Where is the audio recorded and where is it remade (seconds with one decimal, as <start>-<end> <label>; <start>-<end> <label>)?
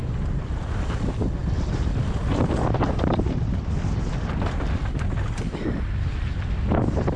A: 0.0-7.2 recorded